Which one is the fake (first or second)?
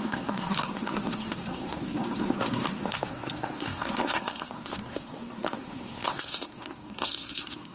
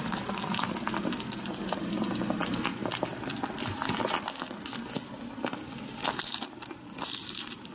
first